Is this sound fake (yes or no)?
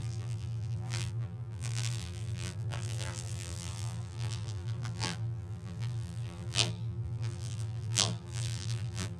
yes